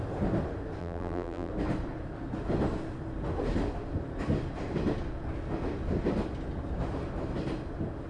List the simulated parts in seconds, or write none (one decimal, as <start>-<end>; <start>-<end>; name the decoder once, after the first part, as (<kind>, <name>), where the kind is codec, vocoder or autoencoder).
0.8-1.5 (vocoder, BigVGAN v2)